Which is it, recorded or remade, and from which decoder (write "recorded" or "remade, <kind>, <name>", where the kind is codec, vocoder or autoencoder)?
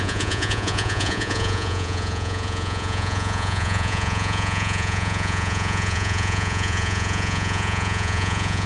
remade, vocoder, Vocos